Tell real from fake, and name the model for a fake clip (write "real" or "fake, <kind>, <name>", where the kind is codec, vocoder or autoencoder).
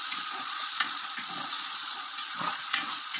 fake, vocoder, Vocos